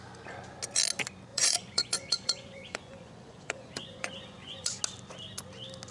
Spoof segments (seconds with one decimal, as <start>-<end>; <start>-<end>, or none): 1.3-4.8

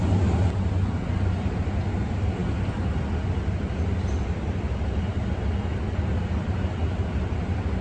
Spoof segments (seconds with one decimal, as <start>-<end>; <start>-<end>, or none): none

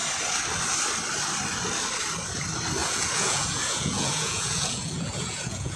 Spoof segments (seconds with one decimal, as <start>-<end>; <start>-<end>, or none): 2.8-5.8

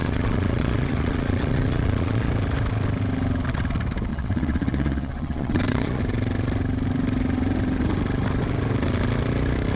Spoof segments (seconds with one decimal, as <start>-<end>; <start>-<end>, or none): 0.0-2.3; 4.1-6.0

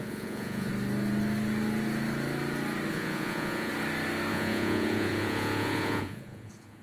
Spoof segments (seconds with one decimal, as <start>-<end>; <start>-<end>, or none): 0.0-0.7; 2.9-3.7; 4.3-6.8

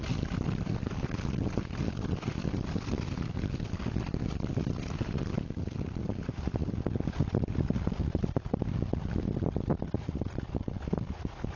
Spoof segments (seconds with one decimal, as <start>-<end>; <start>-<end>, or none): none

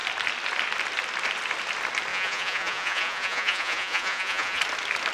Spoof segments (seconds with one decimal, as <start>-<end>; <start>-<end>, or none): 2.1-4.6

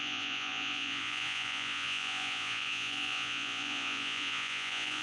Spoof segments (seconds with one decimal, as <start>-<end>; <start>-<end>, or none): 0.0-5.0